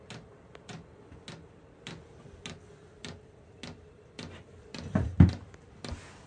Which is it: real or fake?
real